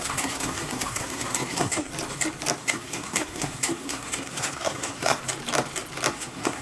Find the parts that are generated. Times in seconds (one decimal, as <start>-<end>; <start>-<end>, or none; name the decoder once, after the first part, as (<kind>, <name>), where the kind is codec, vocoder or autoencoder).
0.0-1.9 (codec, SNAC); 2.6-5.2; 6.1-6.6

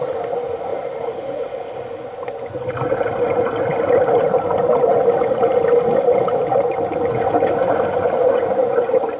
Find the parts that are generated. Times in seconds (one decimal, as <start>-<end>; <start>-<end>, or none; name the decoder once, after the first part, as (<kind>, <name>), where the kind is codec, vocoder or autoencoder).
none